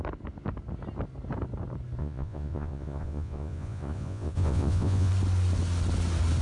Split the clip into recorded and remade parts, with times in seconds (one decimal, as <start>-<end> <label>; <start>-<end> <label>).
0.0-2.0 recorded; 2.0-5.1 remade; 5.1-6.4 recorded